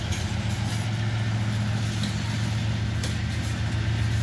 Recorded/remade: recorded